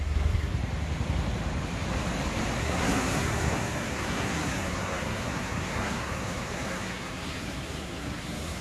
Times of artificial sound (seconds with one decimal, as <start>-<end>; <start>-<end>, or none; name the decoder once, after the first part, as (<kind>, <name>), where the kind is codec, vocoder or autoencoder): 0.0-0.5 (codec, SNAC); 2.6-8.6